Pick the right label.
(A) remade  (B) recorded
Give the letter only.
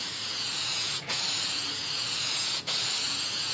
A